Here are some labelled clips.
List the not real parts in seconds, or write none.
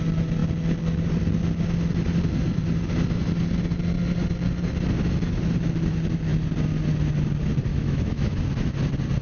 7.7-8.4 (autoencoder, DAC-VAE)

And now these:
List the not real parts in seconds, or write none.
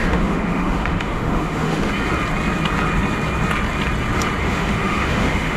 0.0-1.9 (autoencoder, DAC-VAE); 4.4-5.6